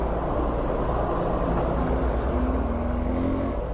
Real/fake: real